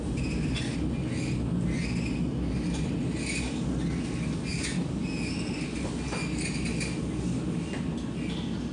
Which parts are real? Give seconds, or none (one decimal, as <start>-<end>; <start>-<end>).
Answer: 0.0-4.5; 5.2-8.7